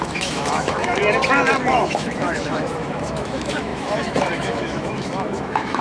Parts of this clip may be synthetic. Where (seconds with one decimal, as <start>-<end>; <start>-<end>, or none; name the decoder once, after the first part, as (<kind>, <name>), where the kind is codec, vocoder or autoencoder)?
0.0-1.0 (autoencoder, DAC-VAE); 1.7-5.8